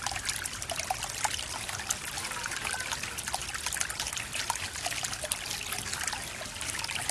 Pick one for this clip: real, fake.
real